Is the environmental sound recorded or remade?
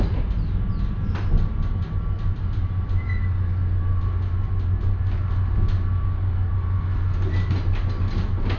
recorded